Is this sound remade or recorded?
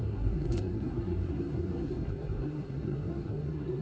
remade